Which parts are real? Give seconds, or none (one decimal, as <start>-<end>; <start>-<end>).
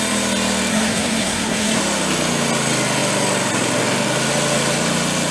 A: 0.0-0.7; 1.8-5.3